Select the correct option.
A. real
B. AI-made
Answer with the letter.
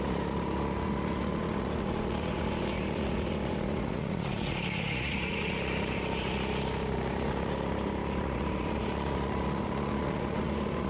B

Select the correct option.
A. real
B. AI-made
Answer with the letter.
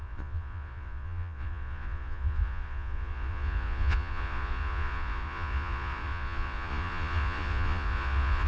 B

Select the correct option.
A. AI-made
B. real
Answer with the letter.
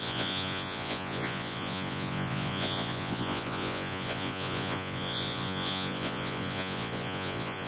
A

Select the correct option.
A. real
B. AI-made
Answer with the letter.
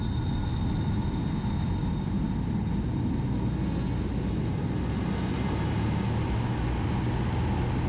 A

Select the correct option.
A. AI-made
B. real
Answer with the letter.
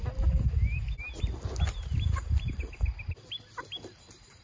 B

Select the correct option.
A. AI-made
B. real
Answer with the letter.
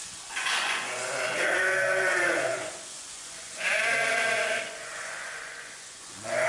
A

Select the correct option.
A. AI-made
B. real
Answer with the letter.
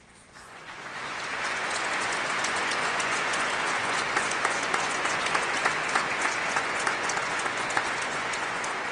A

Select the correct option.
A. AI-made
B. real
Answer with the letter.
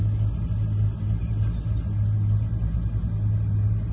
B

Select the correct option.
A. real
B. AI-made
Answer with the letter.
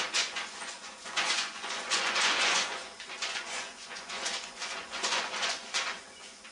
B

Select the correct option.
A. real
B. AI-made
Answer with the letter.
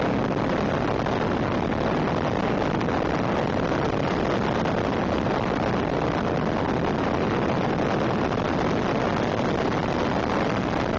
A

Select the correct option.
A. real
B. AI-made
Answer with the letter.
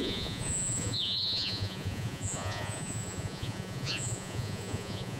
B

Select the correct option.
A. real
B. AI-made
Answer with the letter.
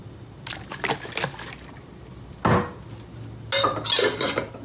A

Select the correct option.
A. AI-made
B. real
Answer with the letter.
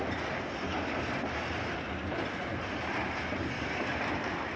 B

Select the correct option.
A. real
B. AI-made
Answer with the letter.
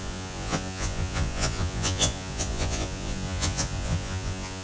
B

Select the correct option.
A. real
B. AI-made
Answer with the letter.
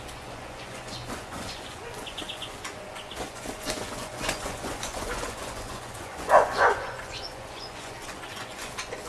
B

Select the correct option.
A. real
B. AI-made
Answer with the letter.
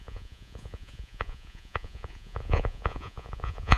B